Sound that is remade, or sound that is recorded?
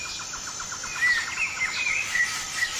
recorded